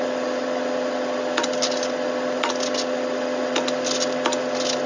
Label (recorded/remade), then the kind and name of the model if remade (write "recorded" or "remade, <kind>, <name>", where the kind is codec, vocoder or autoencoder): recorded